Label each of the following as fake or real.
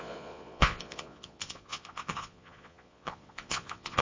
fake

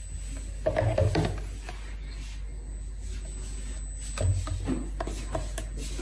real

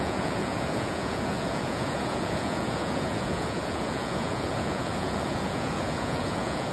fake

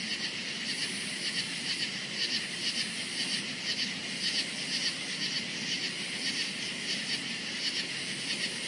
real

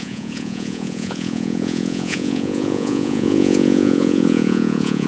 fake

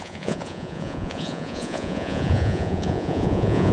fake